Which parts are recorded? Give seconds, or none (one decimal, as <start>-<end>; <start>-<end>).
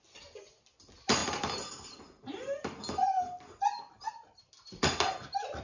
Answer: 0.0-5.6